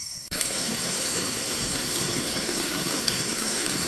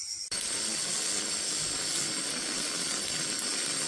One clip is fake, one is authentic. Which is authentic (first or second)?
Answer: second